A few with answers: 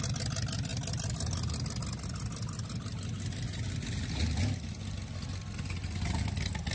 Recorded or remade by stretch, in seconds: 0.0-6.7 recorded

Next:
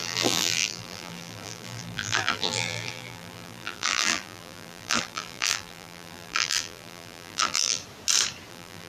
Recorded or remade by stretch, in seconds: 0.0-7.8 remade; 7.8-8.5 recorded; 8.5-8.9 remade

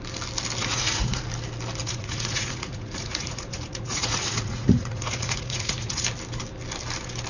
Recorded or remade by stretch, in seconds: 0.0-0.6 recorded; 0.6-1.2 remade; 1.2-1.8 recorded; 1.8-6.0 remade; 6.0-7.3 recorded